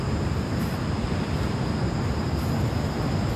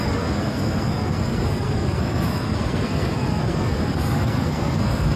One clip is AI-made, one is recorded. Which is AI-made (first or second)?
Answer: second